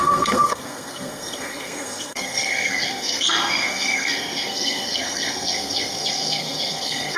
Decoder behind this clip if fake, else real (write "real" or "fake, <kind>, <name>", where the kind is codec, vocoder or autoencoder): fake, codec, SNAC